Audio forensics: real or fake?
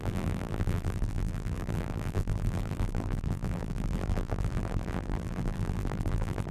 fake